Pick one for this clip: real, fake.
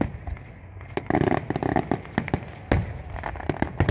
real